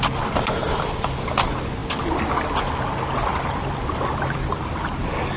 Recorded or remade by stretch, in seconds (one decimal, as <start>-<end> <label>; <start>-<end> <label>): 0.0-5.4 recorded